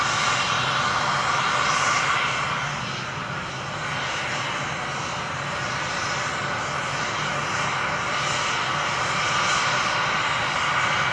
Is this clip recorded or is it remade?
recorded